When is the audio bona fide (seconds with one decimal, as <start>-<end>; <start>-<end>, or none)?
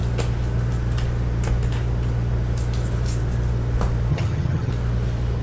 0.0-4.1; 4.7-5.4